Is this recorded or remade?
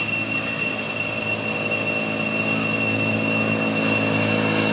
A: recorded